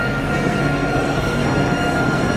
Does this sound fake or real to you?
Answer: fake